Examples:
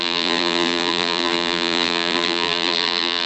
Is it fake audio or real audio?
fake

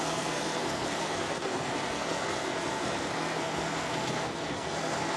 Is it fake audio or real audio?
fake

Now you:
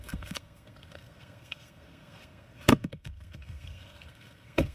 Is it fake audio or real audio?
fake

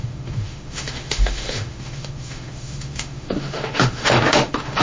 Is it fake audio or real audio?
fake